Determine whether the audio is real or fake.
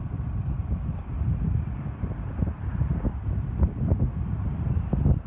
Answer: real